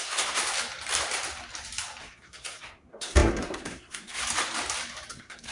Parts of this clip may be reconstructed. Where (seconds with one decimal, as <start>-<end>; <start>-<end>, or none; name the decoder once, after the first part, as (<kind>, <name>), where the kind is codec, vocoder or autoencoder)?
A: 0.0-0.4 (codec, SNAC); 2.0-4.2; 5.1-5.5